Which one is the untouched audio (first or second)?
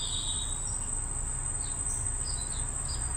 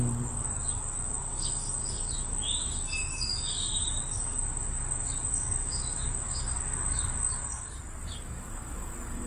first